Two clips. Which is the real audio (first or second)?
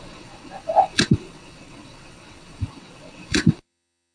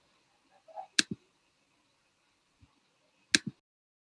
second